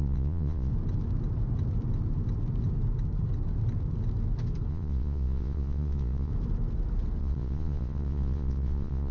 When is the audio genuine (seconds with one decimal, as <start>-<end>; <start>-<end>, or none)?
0.7-4.7; 6.3-7.2